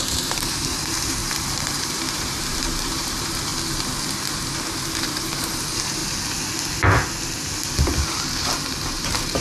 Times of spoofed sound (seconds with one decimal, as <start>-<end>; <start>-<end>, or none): 0.0-3.5; 4.6-6.0; 9.0-9.4